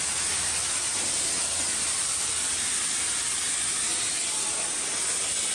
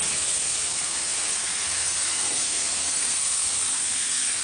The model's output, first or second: second